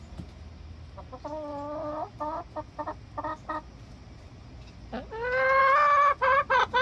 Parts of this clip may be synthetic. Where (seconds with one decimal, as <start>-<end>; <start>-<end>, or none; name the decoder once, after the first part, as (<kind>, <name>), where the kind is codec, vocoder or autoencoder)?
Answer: none